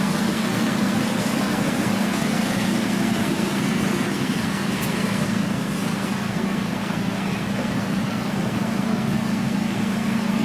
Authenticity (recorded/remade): remade